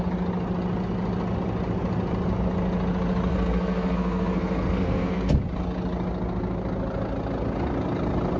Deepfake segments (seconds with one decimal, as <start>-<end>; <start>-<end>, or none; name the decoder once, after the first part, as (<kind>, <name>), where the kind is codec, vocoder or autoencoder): 3.3-5.3 (codec, SNAC)